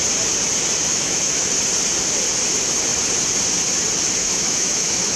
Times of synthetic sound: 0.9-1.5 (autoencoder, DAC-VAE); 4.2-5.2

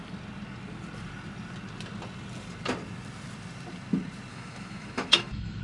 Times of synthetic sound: 4.3-5.6 (autoencoder, DAC-VAE)

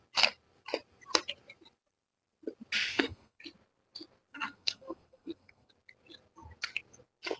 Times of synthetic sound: 2.9-3.4 (codec, SNAC); 4.3-5.7